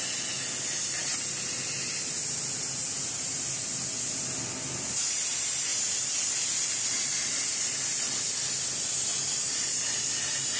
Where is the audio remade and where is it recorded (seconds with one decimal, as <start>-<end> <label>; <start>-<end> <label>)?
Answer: 0.0-10.6 recorded